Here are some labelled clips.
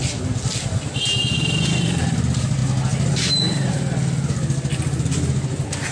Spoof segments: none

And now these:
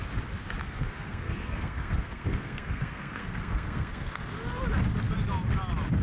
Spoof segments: 0.6-4.2

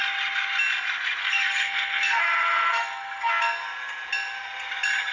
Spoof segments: 1.2-3.3

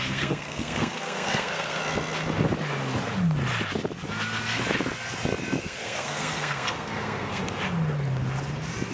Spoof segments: 0.0-1.8; 5.6-7.4

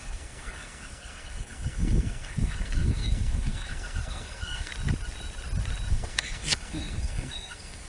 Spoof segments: 0.0-4.7; 5.9-7.9

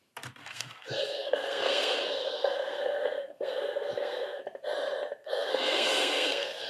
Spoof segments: 0.4-4.4; 5.2-6.7

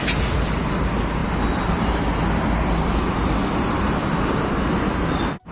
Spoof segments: none

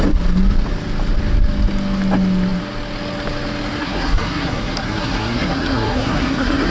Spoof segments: 3.8-6.7